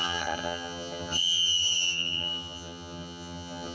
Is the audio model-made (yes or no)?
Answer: yes